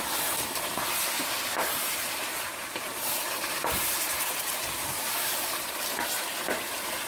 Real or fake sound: fake